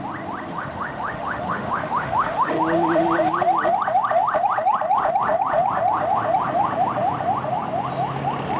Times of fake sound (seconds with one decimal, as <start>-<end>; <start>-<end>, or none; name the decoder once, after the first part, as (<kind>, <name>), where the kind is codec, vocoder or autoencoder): 0.5-2.6 (autoencoder, DAC-VAE)